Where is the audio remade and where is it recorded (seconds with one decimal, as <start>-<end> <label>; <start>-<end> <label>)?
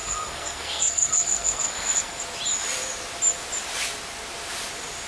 0.0-2.2 remade; 2.2-5.1 recorded